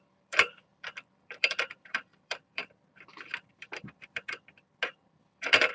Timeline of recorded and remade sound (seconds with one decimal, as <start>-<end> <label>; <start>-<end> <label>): 0.0-2.6 remade; 2.6-5.2 recorded; 5.2-5.7 remade

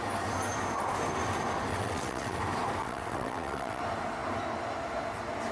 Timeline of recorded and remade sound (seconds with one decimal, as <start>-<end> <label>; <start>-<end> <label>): 0.0-1.7 recorded; 1.7-2.4 remade; 2.4-2.8 recorded; 2.8-3.8 remade; 3.8-5.5 recorded

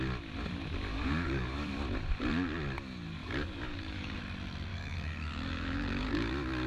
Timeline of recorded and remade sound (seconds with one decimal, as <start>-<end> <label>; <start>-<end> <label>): 0.0-0.9 recorded; 0.9-1.7 remade; 1.7-3.2 recorded; 3.2-4.2 remade; 4.2-4.7 recorded; 4.7-6.3 remade; 6.3-6.7 recorded

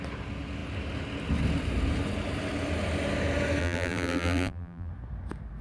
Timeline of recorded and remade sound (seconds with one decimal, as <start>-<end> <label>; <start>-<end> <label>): 0.0-3.6 recorded; 3.6-4.9 remade; 4.9-5.6 recorded

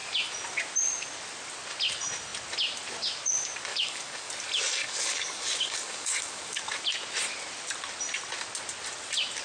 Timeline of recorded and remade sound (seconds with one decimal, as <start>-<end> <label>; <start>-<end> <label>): 0.0-3.7 recorded; 3.7-4.3 remade; 4.3-4.8 recorded; 4.8-6.6 remade; 6.6-9.4 recorded

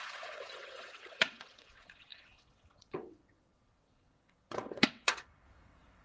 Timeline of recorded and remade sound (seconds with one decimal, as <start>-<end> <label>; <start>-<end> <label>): 0.0-6.0 remade